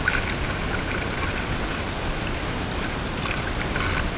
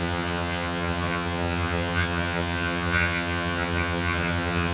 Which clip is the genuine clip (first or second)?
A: first